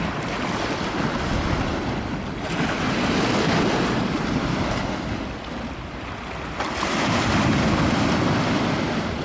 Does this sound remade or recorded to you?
recorded